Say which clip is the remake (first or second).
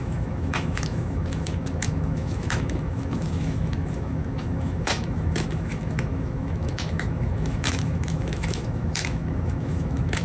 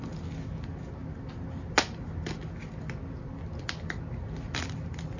first